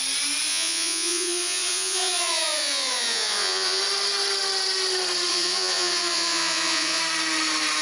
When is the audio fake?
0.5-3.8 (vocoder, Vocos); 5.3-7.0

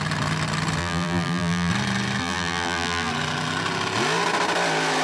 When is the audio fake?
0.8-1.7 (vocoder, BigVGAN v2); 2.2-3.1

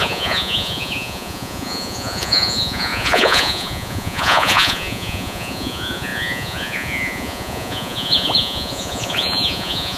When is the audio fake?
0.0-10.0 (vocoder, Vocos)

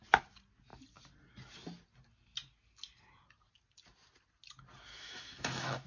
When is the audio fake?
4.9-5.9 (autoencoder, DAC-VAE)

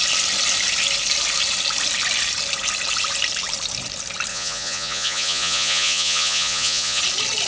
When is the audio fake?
4.3-7.0 (vocoder, Vocos)